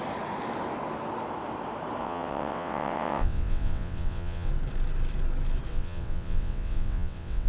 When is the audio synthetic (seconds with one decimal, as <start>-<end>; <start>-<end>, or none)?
2.0-4.5; 5.7-7.5